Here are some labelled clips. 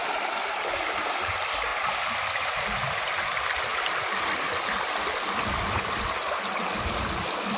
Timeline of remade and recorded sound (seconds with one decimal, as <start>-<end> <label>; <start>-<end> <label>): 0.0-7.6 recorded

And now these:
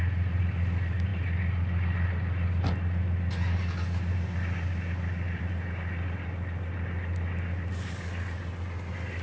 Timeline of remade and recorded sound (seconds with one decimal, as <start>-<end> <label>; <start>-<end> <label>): 0.0-9.2 recorded

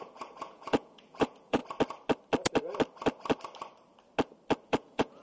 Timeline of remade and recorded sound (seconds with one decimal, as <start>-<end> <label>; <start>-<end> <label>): 0.0-1.6 remade; 1.6-4.7 recorded; 4.7-5.2 remade